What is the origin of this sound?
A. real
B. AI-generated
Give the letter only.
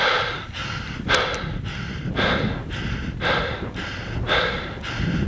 A